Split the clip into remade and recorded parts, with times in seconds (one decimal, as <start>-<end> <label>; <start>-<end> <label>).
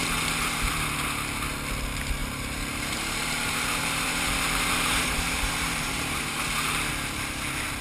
0.0-2.2 recorded; 2.2-6.9 remade; 6.9-7.8 recorded